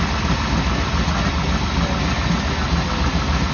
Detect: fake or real real